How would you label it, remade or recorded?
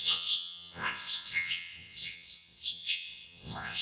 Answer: remade